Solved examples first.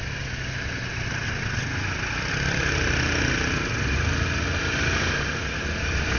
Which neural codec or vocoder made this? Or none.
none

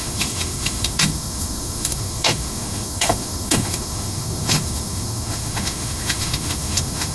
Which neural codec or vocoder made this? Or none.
autoencoder, DAC-VAE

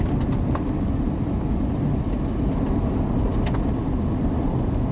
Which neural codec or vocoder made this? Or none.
none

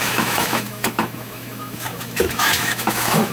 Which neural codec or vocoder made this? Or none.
autoencoder, DAC-VAE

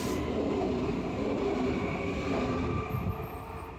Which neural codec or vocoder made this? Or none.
none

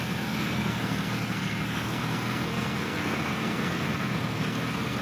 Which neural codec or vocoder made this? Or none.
codec, SNAC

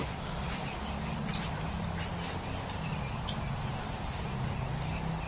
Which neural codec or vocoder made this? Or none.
none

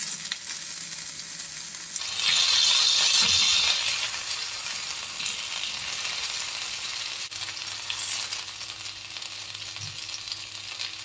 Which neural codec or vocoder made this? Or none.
none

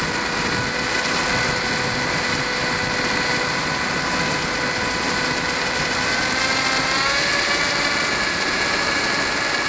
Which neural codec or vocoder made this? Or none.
none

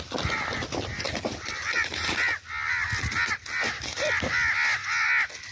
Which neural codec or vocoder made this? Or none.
none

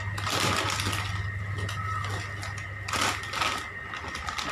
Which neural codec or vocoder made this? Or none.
none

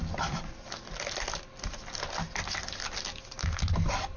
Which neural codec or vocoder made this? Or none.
none